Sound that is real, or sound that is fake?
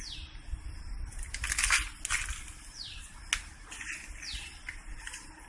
real